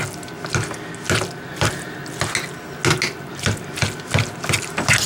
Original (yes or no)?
yes